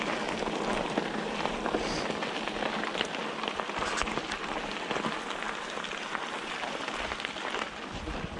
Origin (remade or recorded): recorded